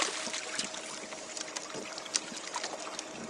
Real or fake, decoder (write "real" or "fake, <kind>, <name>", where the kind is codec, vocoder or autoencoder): real